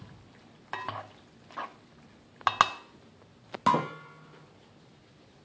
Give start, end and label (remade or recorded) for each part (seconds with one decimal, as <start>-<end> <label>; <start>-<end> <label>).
0.0-5.4 recorded